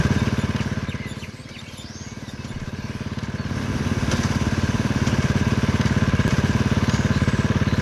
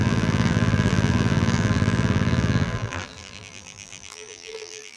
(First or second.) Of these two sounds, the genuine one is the first